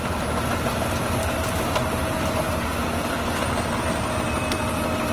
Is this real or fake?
real